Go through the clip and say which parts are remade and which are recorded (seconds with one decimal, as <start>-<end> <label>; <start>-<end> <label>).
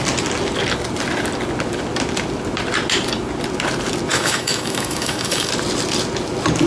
0.0-4.1 recorded; 4.1-5.5 remade; 5.5-6.7 recorded